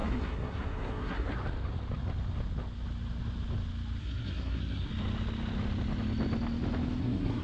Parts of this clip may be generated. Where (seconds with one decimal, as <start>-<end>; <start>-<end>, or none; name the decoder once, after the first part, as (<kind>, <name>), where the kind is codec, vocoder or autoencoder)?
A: 0.0-1.3 (codec, SNAC); 4.0-4.9; 7.0-7.4